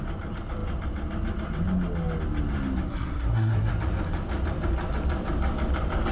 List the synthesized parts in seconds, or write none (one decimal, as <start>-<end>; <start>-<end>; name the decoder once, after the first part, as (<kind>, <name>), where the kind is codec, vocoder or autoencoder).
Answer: 2.9-3.7 (codec, SNAC)